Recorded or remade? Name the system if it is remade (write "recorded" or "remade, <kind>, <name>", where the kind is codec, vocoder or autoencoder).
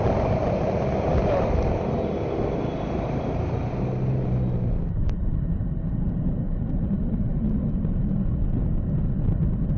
recorded